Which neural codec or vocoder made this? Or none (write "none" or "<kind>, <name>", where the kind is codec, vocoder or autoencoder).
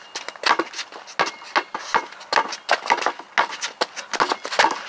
none